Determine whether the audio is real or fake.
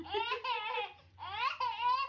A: real